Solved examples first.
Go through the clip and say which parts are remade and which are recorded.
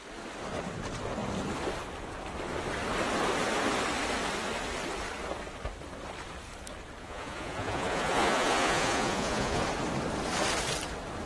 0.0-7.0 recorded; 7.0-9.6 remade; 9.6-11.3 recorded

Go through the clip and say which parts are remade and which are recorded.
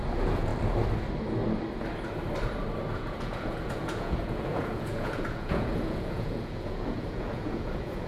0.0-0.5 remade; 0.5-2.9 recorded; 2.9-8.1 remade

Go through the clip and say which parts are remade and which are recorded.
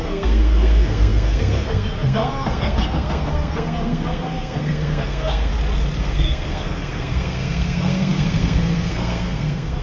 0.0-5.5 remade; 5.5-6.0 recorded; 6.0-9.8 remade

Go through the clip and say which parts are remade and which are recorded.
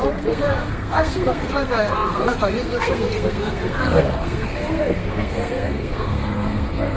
0.0-7.0 remade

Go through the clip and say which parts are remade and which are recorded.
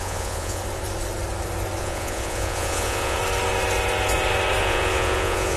0.0-0.6 remade; 0.6-1.8 recorded; 1.8-3.2 remade; 3.2-4.6 recorded; 4.6-5.6 remade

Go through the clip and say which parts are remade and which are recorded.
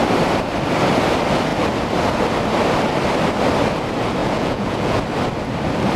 0.0-4.2 recorded; 4.2-5.0 remade; 5.0-6.0 recorded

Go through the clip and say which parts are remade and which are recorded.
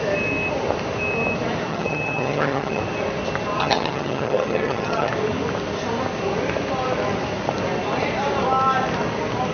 0.0-1.7 recorded; 1.7-2.8 remade; 2.8-3.6 recorded; 3.6-5.1 remade; 5.1-9.5 recorded